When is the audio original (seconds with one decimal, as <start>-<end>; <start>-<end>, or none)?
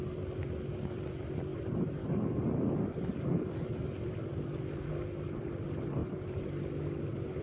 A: 0.0-6.0; 6.6-7.4